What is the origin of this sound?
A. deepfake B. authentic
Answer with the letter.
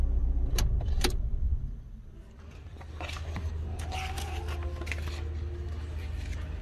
B